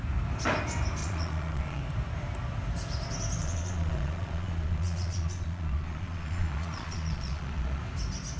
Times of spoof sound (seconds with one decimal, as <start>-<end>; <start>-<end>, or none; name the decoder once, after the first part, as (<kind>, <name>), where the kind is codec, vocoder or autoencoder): 1.0-1.8 (vocoder, Vocos); 3.4-7.8